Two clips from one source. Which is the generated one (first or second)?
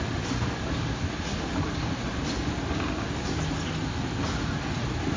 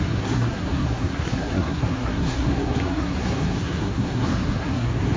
second